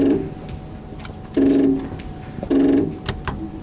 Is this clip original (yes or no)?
yes